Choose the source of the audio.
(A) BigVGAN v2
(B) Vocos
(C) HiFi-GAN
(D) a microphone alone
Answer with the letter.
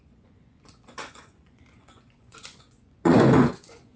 B